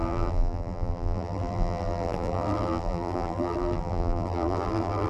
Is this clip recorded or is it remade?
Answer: remade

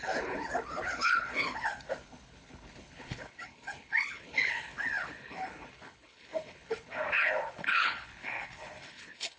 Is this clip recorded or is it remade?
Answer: remade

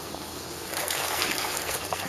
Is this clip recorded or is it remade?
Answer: remade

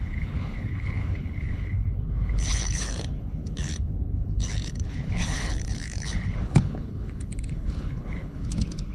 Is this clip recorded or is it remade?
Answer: remade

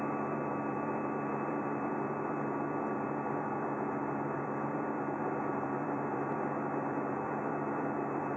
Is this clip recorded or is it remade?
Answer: remade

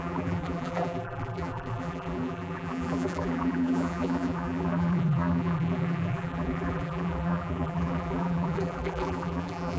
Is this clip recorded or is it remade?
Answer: remade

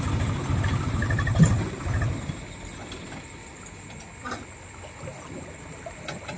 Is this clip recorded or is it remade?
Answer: recorded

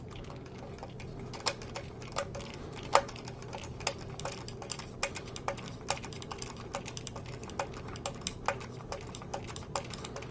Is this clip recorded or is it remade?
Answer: recorded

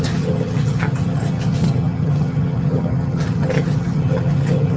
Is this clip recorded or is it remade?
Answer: remade